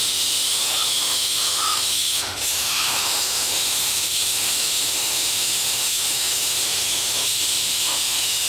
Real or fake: fake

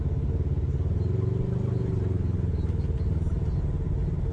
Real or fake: real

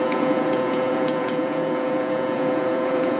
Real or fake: fake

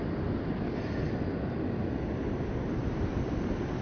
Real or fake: real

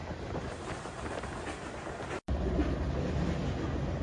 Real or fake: real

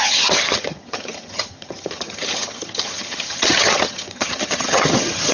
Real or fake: fake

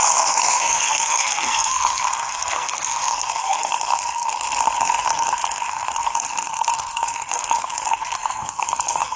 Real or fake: fake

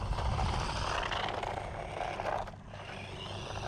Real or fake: real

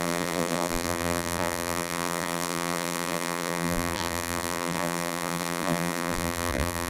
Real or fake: fake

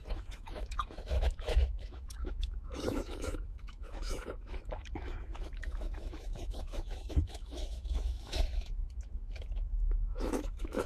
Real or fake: fake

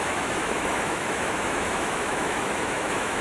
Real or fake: fake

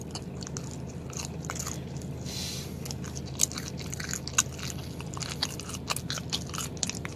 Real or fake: real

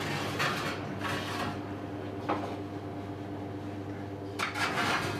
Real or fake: real